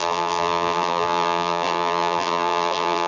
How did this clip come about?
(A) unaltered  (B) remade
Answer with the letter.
B